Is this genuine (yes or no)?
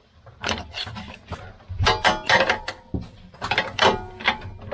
yes